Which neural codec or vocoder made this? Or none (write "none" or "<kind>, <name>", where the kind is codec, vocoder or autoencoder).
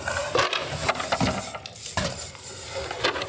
none